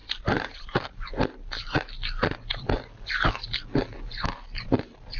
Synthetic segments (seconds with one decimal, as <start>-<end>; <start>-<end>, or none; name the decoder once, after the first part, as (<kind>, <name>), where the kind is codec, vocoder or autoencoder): 0.0-1.1 (vocoder, BigVGAN v2)